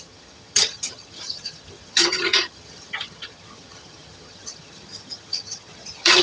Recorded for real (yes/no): no